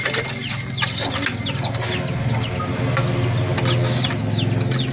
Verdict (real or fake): real